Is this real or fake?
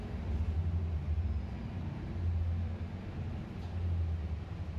real